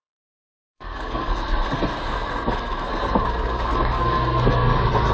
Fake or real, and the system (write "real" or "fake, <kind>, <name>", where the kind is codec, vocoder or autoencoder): fake, codec, SNAC